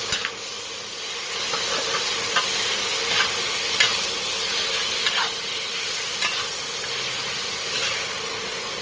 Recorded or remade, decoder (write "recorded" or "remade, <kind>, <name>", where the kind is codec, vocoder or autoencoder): recorded